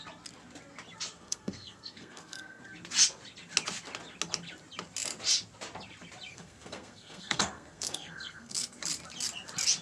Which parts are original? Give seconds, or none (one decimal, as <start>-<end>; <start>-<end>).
0.0-1.1; 2.6-6.3; 8.8-9.8